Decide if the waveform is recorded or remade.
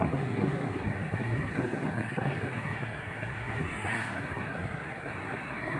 remade